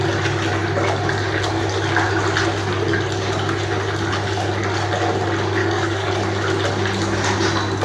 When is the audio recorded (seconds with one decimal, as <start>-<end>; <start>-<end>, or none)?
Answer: 0.0-5.6; 6.1-7.8